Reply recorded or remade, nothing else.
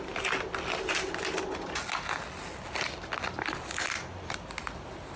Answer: recorded